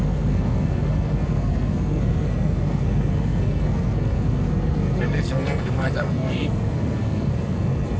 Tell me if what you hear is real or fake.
fake